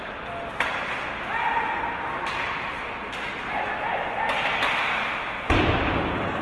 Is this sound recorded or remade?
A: recorded